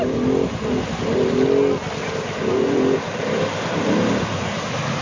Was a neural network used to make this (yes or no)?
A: no